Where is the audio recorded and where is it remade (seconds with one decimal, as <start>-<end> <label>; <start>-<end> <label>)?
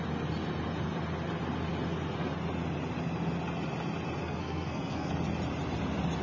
0.0-4.2 recorded; 4.2-5.1 remade; 5.1-6.2 recorded